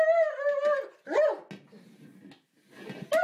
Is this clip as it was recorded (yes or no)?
yes